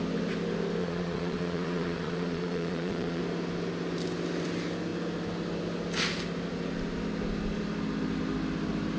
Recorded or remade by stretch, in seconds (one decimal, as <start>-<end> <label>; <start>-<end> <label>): 0.0-0.8 recorded; 0.8-3.2 remade; 3.2-9.0 recorded